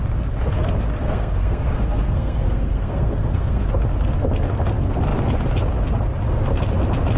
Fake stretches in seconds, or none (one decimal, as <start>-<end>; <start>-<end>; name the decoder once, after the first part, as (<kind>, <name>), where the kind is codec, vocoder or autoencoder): 0.9-3.7 (codec, SNAC)